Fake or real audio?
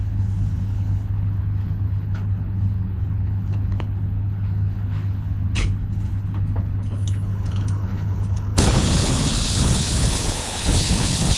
fake